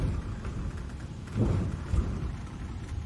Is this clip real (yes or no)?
no